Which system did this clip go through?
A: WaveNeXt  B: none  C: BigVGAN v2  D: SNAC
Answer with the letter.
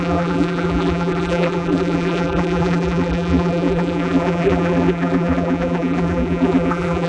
C